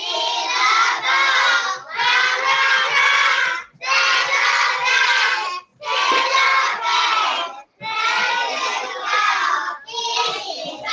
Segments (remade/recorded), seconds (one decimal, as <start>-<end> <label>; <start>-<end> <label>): 0.0-1.0 remade; 1.0-10.9 recorded